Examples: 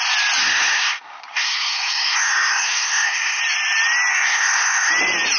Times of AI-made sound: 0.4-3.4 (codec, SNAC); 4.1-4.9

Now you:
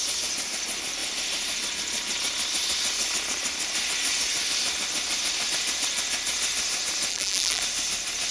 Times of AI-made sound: 7.1-7.6 (vocoder, BigVGAN v2)

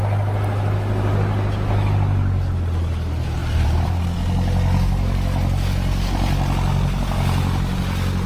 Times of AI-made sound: 3.4-4.0 (vocoder, BigVGAN v2)

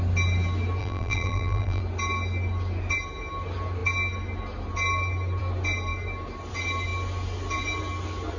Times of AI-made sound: 0.8-1.8 (vocoder, BigVGAN v2)